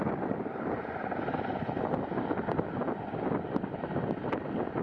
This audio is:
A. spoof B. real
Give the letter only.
B